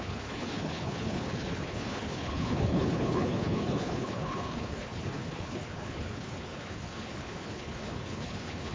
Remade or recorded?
remade